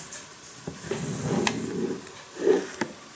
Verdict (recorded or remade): recorded